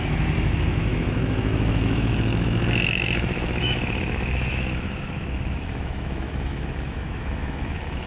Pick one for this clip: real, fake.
fake